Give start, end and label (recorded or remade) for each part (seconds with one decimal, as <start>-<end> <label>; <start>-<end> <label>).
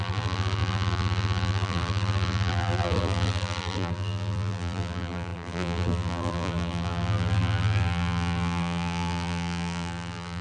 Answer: 0.0-10.4 remade